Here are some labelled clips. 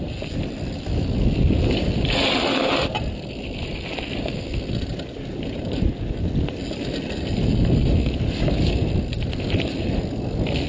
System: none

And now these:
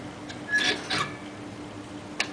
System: none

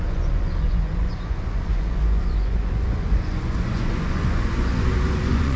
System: vocoder, Vocos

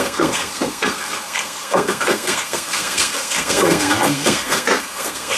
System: codec, SNAC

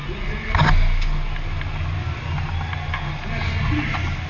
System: none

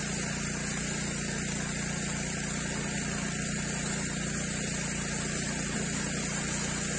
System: none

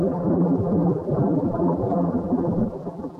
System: vocoder, BigVGAN v2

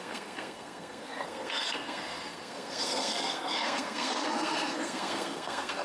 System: codec, SNAC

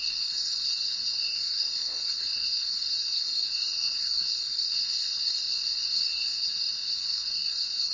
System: codec, SNAC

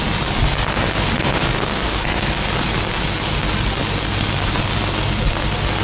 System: none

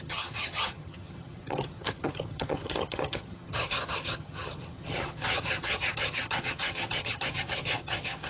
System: vocoder, HiFi-GAN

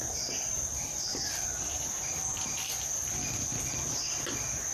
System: vocoder, BigVGAN v2